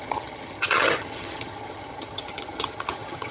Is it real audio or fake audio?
fake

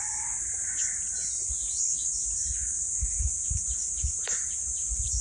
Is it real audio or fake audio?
real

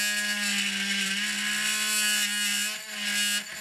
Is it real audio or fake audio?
real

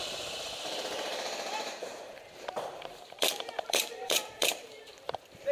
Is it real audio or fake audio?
fake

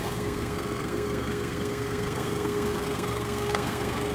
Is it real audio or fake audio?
fake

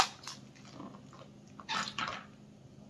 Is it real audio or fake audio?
real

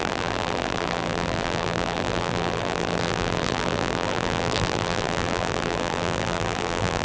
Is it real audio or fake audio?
fake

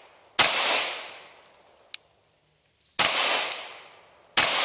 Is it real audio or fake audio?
real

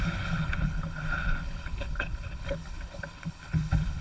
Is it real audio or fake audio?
fake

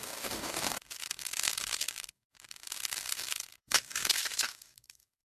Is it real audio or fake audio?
fake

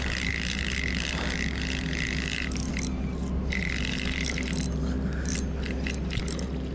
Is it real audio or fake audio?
real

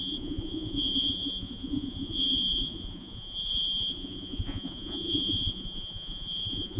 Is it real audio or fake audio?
fake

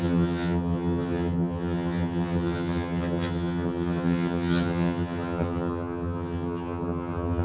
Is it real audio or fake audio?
fake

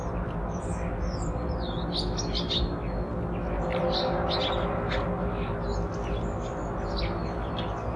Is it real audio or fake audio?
real